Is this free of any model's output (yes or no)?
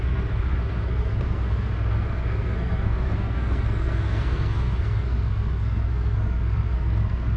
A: no